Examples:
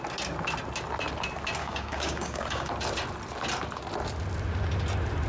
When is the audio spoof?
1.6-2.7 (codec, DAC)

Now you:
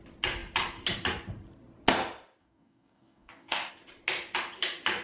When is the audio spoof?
2.4-3.7 (codec, DAC)